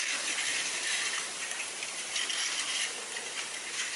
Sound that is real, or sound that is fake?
fake